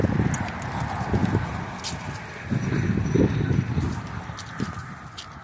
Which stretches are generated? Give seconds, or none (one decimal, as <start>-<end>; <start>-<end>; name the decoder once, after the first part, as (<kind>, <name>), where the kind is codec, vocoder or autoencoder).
none